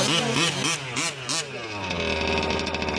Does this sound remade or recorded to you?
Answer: recorded